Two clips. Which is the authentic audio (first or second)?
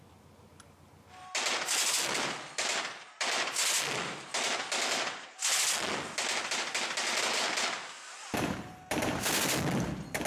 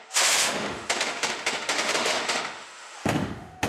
first